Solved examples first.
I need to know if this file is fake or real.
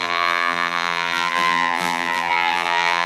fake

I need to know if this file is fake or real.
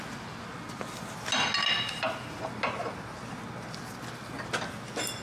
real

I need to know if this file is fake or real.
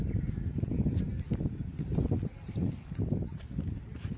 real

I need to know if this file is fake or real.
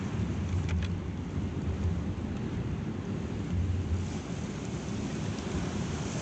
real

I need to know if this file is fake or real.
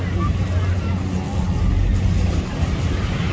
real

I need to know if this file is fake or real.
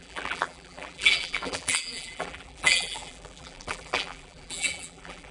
fake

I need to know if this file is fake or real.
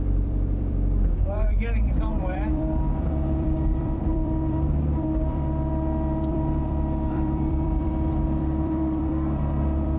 fake